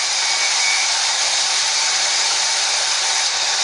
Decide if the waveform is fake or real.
real